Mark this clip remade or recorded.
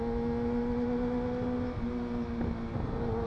recorded